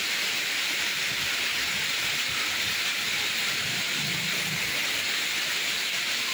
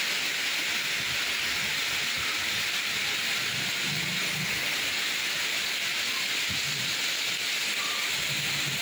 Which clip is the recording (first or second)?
second